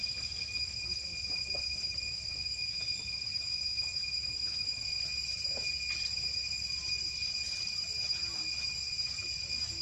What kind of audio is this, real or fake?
real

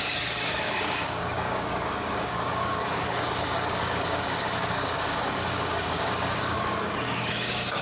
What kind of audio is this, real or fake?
fake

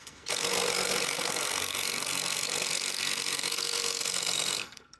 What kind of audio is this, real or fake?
fake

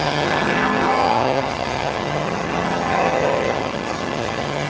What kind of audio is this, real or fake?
fake